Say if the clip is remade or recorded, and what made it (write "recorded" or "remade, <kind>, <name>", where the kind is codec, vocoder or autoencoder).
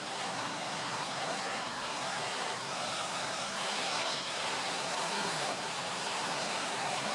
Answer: remade, codec, SNAC